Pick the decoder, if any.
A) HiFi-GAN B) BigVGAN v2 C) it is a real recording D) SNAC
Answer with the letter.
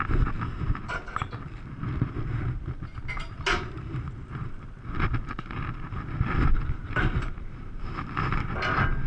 C